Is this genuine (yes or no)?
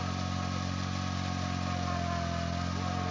yes